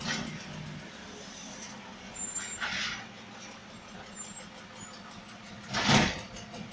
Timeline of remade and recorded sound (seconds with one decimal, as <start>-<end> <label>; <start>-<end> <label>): 0.0-6.7 recorded